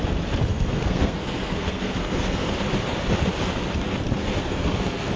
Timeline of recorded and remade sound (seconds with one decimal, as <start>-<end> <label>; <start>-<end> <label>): 0.0-0.5 recorded; 0.5-2.5 remade; 2.5-4.2 recorded; 4.2-5.2 remade